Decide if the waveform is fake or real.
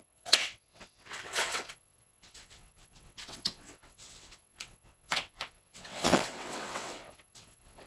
fake